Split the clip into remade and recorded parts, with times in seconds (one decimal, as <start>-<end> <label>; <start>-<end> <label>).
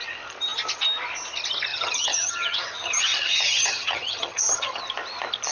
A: 0.0-1.7 recorded; 1.7-4.8 remade; 4.8-5.5 recorded